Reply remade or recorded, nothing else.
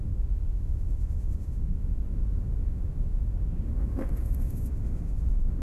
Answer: remade